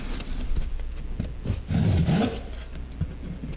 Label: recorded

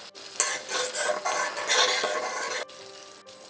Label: recorded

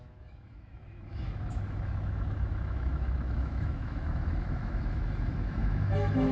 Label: remade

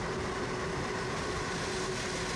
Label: recorded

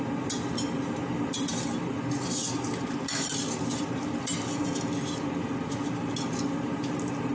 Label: recorded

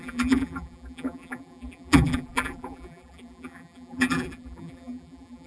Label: remade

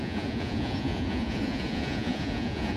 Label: remade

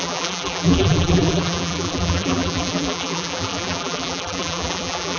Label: remade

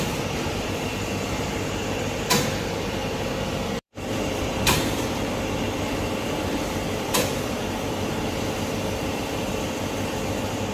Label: remade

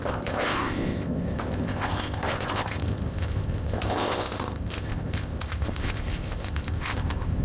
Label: remade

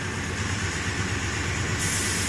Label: remade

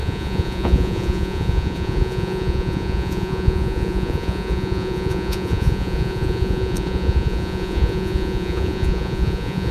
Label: remade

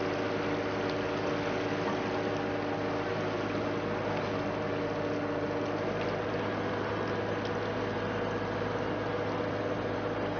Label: recorded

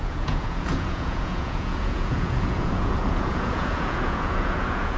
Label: remade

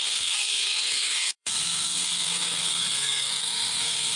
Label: remade